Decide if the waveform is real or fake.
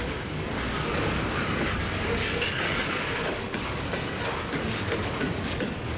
fake